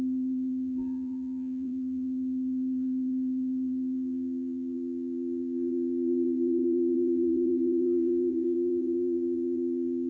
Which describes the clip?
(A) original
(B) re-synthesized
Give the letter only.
B